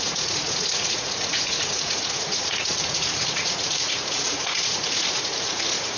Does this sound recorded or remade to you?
remade